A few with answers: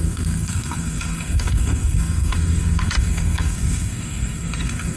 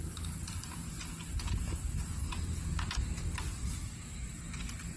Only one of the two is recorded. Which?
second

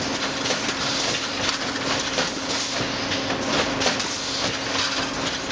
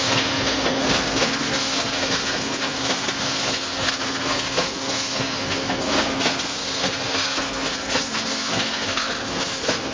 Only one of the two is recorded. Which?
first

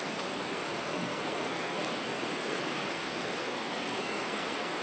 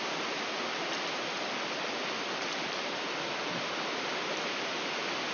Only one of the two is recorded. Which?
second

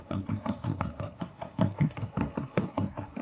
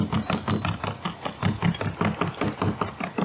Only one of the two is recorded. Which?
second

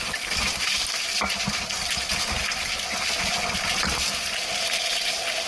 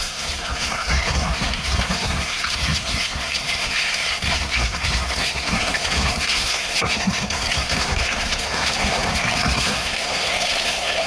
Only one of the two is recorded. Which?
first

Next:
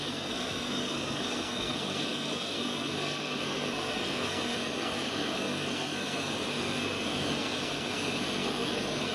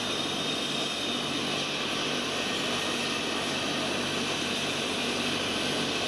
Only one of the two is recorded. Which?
second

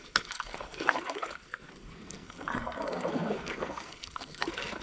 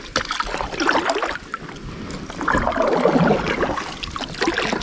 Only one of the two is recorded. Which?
second